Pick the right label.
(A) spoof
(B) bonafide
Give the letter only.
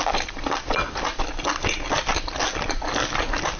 B